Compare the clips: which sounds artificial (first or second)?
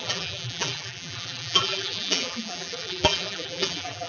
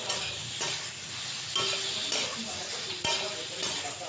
first